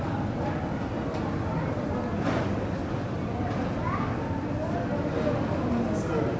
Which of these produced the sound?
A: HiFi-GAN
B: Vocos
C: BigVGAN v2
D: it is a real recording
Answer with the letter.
D